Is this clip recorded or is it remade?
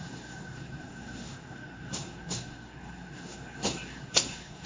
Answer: remade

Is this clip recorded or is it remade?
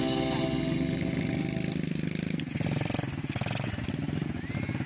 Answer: recorded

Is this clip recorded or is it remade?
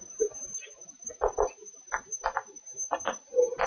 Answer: recorded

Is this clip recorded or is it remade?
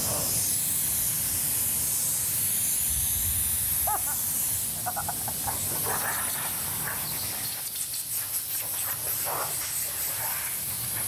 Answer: recorded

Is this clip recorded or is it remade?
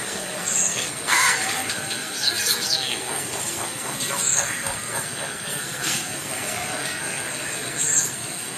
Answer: remade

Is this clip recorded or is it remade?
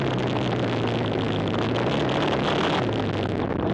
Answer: recorded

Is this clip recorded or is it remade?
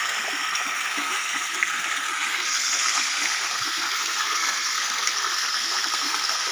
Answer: remade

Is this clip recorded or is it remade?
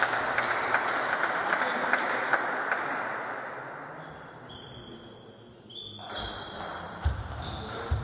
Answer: recorded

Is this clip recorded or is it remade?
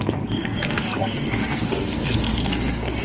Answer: remade